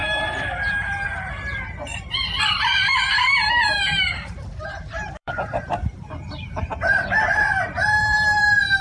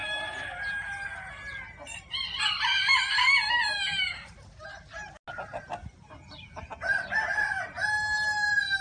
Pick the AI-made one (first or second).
first